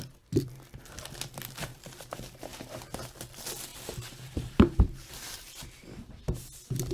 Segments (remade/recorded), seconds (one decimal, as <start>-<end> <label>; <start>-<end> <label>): 0.0-1.7 recorded; 1.7-3.1 remade; 3.1-3.7 recorded; 3.7-6.2 remade; 6.2-6.9 recorded